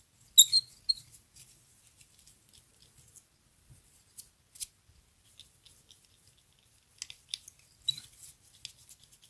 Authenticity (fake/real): real